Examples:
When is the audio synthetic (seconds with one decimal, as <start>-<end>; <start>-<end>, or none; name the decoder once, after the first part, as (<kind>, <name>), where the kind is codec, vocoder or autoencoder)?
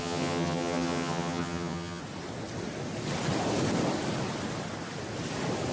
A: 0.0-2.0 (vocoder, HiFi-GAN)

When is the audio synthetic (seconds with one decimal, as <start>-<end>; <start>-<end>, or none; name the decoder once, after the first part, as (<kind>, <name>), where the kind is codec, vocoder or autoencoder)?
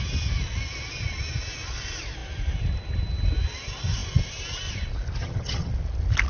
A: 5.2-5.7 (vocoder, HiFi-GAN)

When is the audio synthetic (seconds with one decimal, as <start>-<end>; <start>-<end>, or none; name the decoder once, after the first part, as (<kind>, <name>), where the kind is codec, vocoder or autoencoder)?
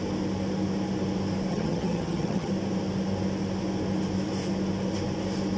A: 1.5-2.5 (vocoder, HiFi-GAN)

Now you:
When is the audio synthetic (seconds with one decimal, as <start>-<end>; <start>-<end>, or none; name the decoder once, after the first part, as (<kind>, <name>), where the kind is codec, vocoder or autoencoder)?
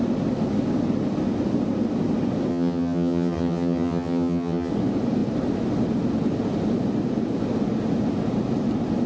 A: 2.5-4.7 (vocoder, HiFi-GAN)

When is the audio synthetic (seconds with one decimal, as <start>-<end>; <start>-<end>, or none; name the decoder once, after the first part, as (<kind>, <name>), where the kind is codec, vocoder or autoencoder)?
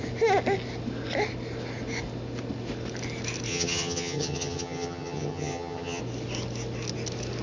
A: 3.5-6.0 (vocoder, HiFi-GAN)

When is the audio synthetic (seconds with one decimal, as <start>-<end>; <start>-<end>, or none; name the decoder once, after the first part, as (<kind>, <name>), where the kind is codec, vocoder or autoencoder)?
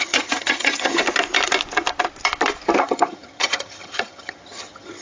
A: 0.0-1.0 (vocoder, HiFi-GAN); 2.8-5.0